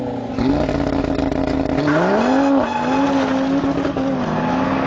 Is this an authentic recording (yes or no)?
yes